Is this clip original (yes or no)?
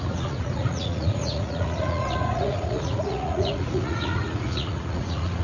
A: no